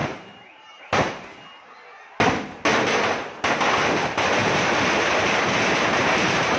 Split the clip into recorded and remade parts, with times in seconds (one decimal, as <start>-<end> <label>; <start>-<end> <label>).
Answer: 0.0-0.8 remade; 0.8-4.4 recorded; 4.4-6.6 remade